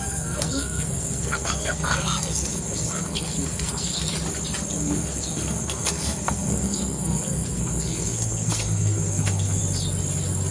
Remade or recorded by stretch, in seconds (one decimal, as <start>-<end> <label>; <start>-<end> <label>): 0.0-4.1 remade; 4.1-4.7 recorded; 4.7-9.6 remade; 9.6-10.5 recorded